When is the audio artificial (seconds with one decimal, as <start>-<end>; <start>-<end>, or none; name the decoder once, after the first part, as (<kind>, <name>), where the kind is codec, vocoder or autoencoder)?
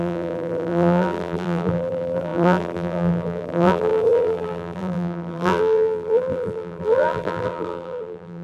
0.0-8.4 (vocoder, BigVGAN v2)